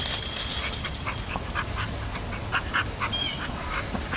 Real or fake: real